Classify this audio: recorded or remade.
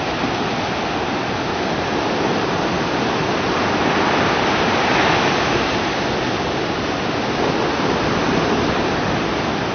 recorded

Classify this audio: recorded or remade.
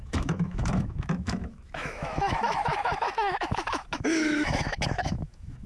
remade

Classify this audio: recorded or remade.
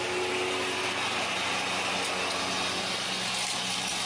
recorded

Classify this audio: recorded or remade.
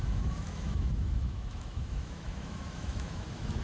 remade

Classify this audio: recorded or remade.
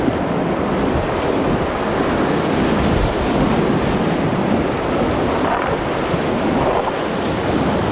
recorded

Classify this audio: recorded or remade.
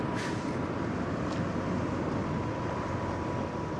recorded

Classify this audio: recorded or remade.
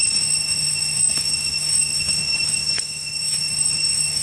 remade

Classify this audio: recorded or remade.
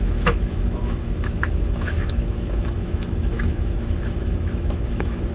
remade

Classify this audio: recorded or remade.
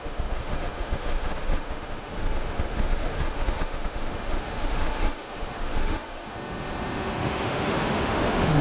remade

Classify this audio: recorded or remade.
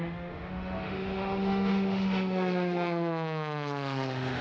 remade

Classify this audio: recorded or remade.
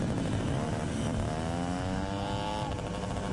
recorded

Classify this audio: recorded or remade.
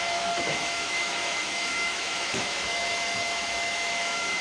remade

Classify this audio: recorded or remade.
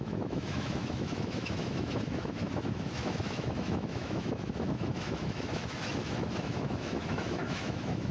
remade